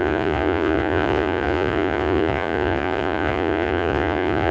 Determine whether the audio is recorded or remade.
remade